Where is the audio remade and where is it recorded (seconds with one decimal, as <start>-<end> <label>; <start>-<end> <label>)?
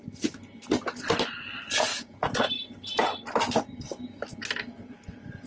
0.0-1.9 recorded; 1.9-2.5 remade; 2.5-5.5 recorded